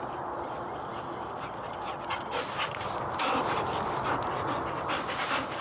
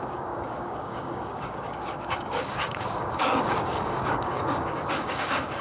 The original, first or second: first